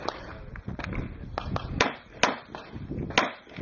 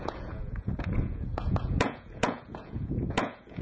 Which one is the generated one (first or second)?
second